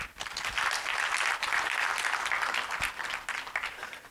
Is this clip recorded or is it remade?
recorded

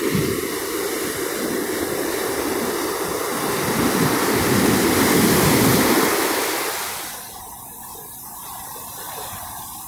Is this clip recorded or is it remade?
recorded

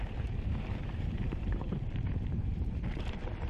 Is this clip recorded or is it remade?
remade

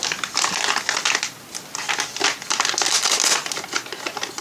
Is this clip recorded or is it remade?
recorded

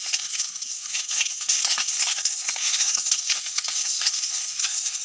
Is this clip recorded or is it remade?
remade